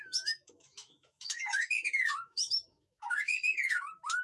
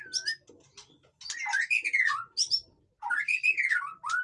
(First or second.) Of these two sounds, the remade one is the first